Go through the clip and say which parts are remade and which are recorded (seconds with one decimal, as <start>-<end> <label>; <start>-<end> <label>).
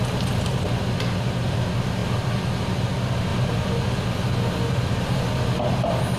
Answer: 0.0-6.2 recorded